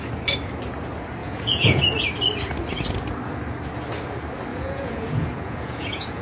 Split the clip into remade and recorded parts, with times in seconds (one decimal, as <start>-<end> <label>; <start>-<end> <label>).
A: 0.0-1.2 recorded; 1.2-1.8 remade; 1.8-4.5 recorded; 4.5-6.2 remade